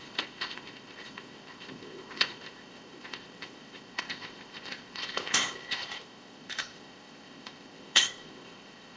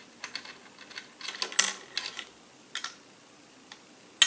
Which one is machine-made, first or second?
first